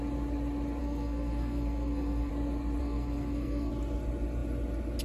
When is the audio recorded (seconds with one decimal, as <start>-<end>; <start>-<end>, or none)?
0.0-0.8; 2.3-2.8; 3.7-5.0